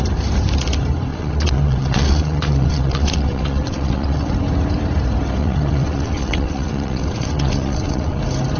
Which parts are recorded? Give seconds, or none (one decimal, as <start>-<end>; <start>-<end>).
0.0-1.1; 4.3-5.4; 8.2-8.6